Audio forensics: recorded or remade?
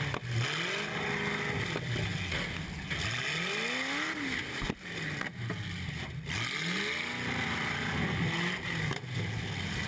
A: recorded